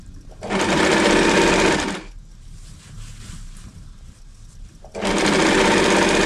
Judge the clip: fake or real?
real